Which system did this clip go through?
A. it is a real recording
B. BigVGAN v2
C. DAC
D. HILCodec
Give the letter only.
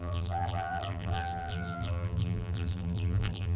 B